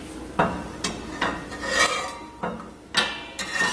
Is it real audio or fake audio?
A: real